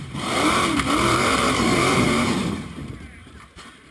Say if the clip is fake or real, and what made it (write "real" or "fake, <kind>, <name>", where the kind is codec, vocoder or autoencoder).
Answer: fake, vocoder, BigVGAN v2